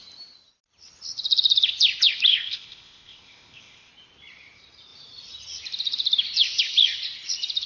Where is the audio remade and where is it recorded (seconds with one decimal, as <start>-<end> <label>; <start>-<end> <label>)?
0.0-2.3 recorded; 2.3-3.9 remade; 3.9-7.7 recorded